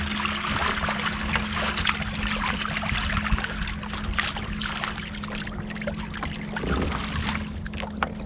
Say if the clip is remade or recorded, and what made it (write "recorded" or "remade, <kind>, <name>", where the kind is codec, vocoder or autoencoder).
recorded